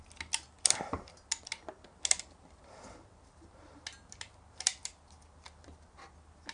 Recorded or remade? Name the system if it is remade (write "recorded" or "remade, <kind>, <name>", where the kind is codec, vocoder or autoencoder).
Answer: recorded